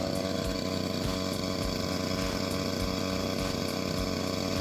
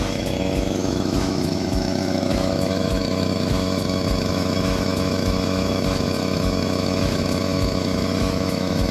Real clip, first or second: first